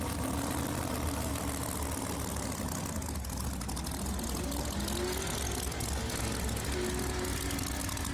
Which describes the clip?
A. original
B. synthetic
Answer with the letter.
A